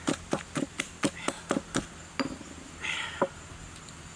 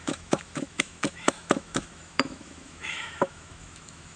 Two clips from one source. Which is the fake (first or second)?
second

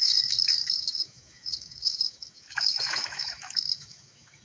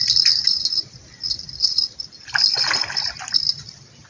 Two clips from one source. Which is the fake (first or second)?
first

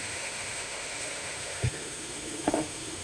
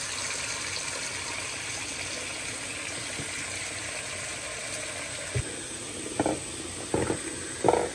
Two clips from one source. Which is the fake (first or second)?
first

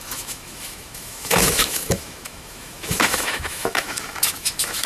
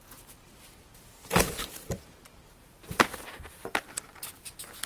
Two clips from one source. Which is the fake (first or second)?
first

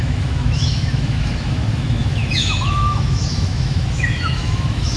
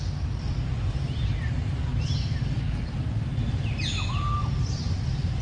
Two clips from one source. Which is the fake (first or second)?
first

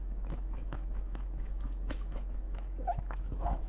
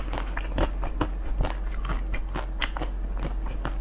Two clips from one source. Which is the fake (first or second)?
first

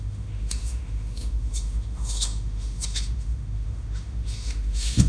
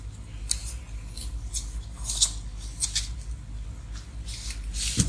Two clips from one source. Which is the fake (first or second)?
first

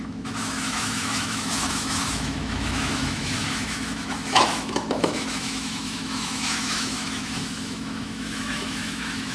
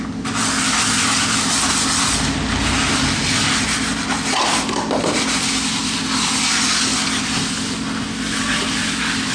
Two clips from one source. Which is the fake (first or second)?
first